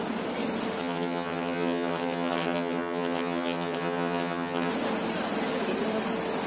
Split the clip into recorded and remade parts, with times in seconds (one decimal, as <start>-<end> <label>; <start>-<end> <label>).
0.0-0.8 recorded; 0.8-4.7 remade; 4.7-6.5 recorded